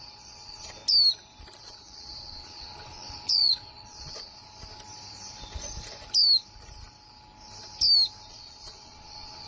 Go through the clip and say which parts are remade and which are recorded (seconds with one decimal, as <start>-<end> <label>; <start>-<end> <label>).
0.0-0.8 remade; 0.8-1.6 recorded; 1.6-4.4 remade; 4.4-8.3 recorded; 8.3-9.5 remade